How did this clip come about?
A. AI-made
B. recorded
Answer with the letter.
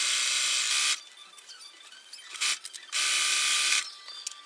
B